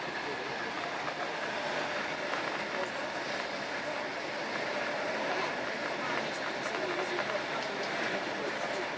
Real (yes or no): yes